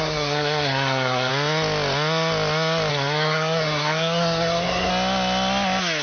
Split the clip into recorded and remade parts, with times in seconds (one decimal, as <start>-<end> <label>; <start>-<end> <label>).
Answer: 0.0-1.3 remade; 1.3-2.9 recorded; 2.9-4.9 remade; 4.9-6.0 recorded